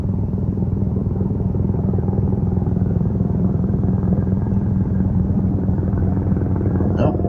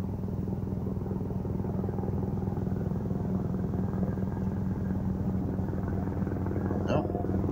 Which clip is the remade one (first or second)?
first